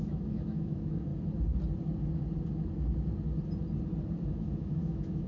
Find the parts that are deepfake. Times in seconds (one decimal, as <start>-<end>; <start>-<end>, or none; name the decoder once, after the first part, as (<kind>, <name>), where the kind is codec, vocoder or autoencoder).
0.0-1.1 (autoencoder, DAC-VAE); 4.3-5.3